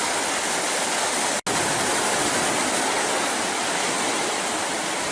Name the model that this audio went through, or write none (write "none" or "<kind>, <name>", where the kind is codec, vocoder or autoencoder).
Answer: none